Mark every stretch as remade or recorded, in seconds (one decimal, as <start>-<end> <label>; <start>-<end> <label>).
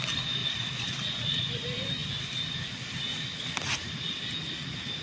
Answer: 0.0-0.4 recorded; 0.4-1.5 remade; 1.5-5.0 recorded